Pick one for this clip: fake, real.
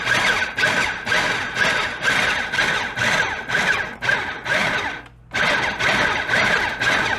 real